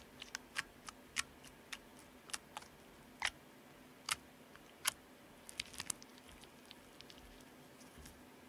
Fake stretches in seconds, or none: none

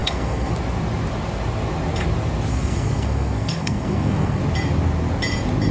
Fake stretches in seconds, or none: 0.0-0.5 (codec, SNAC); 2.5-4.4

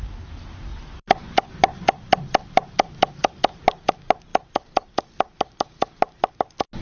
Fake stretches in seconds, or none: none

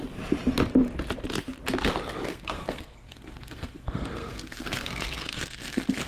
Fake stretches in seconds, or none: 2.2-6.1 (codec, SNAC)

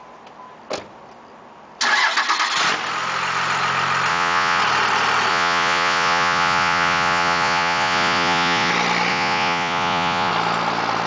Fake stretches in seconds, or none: 4.1-4.6 (vocoder, Vocos); 5.3-8.7; 9.1-10.3

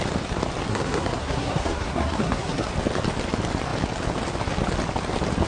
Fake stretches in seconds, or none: 0.7-2.7 (codec, SNAC)